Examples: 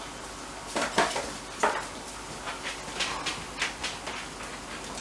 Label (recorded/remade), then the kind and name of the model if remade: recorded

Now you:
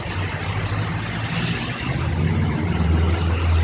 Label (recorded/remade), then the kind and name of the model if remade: recorded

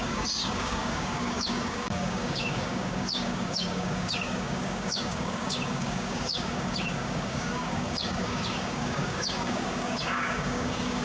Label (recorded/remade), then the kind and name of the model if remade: remade, codec, DAC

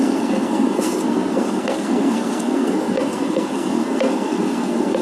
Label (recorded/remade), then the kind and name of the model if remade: remade, codec, SNAC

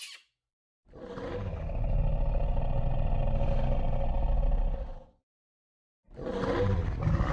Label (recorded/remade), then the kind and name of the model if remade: recorded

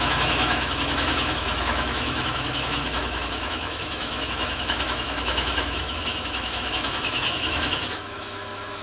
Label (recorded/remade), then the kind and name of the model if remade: remade, autoencoder, DAC-VAE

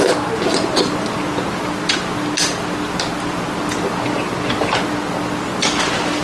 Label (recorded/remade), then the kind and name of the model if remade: recorded